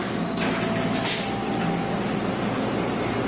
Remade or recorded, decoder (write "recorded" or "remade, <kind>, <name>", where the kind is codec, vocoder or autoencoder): recorded